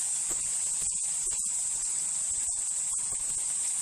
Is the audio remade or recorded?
remade